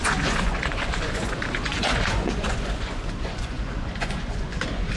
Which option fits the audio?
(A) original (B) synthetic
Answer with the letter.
B